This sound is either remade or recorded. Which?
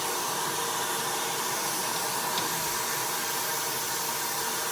recorded